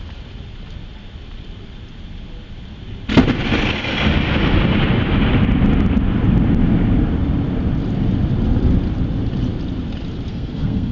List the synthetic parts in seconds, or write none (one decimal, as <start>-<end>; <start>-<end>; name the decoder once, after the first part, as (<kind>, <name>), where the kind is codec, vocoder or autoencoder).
10.3-10.9 (codec, SNAC)